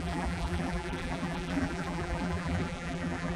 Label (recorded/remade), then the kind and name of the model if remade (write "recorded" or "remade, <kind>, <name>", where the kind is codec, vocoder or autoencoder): remade, vocoder, BigVGAN v2